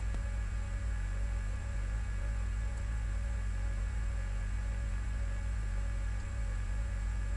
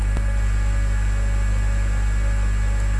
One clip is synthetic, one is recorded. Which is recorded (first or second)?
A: second